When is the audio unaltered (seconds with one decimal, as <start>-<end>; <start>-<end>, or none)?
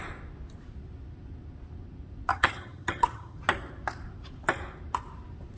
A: 0.0-2.3; 3.4-5.6